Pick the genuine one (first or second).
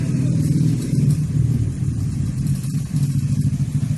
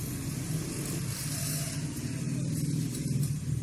second